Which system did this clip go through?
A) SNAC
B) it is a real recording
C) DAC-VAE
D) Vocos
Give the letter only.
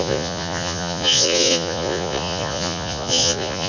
D